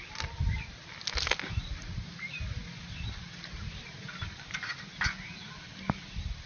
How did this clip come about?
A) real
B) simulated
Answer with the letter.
A